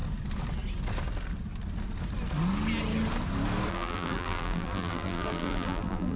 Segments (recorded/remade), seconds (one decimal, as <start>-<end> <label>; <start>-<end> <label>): 0.0-3.7 recorded; 3.7-6.2 remade